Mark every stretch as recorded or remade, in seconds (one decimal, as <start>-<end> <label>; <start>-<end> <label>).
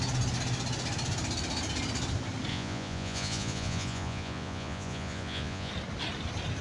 0.0-2.5 recorded; 2.5-5.7 remade; 5.7-6.6 recorded